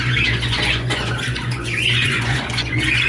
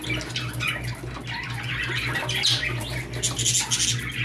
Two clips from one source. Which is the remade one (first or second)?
first